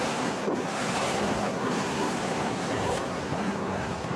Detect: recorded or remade remade